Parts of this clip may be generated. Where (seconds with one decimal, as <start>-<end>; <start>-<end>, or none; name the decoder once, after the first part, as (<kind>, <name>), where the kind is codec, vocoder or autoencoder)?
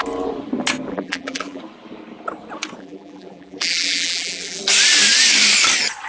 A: 0.9-1.6 (vocoder, BigVGAN v2); 2.8-4.6